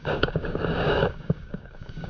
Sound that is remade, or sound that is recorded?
remade